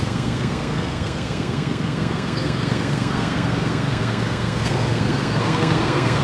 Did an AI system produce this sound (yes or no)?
yes